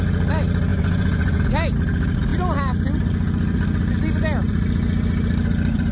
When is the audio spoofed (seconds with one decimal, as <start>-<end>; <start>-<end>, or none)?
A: 0.7-1.4